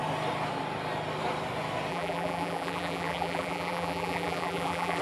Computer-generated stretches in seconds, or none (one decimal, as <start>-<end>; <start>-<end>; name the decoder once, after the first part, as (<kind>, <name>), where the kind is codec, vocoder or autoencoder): 1.9-5.0 (vocoder, BigVGAN v2)